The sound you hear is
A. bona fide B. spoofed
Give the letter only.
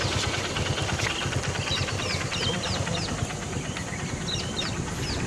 B